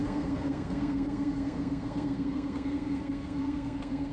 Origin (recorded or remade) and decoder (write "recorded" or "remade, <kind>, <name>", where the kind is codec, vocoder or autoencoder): remade, codec, SNAC